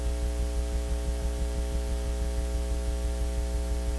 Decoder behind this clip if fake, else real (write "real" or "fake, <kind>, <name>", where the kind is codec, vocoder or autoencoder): real